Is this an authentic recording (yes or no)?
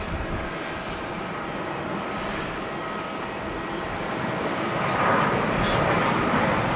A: yes